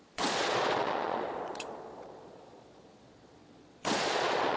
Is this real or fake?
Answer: fake